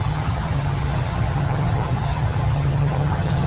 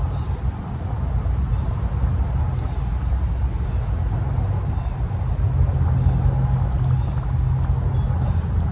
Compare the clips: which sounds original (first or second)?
second